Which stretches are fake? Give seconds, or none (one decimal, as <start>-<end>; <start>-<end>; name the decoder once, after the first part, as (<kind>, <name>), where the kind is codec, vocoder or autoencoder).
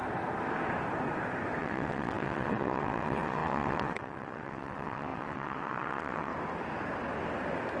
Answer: 1.6-6.3 (vocoder, WaveNeXt)